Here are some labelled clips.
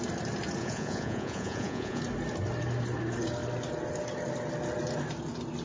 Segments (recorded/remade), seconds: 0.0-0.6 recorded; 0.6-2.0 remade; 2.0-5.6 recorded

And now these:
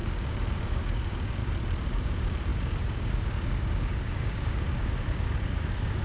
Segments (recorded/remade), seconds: 0.0-1.4 remade; 1.4-1.9 recorded; 1.9-6.0 remade

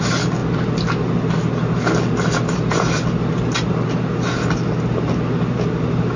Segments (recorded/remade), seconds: 0.0-6.2 recorded

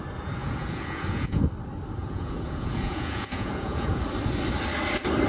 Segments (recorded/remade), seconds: 0.0-0.4 recorded; 0.4-1.4 remade; 1.4-2.0 recorded; 2.0-4.0 remade; 4.0-5.3 recorded